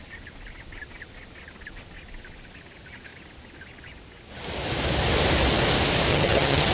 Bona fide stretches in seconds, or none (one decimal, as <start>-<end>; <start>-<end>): 0.0-6.1